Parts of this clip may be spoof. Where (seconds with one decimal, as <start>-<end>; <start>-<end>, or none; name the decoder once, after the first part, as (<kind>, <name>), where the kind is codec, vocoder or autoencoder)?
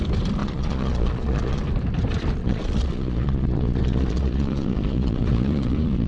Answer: 0.4-1.6 (vocoder, Vocos); 2.4-6.1